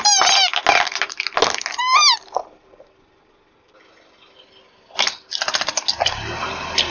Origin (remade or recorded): recorded